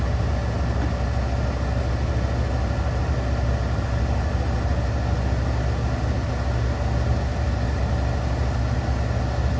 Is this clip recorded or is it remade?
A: recorded